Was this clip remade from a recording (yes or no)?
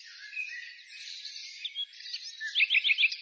no